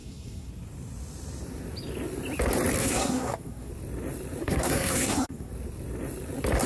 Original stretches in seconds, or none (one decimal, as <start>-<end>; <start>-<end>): 0.5-2.8; 3.7-4.4; 5.5-6.7